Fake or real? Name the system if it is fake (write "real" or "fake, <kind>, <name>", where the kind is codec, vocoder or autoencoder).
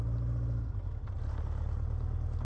real